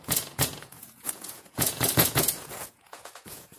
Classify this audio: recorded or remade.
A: remade